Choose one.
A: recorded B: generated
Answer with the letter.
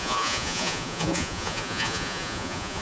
B